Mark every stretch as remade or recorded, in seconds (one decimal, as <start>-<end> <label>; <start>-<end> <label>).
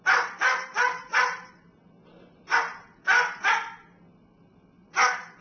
0.0-5.4 recorded